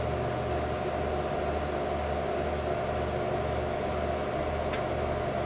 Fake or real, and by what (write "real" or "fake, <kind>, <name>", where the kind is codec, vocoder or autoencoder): real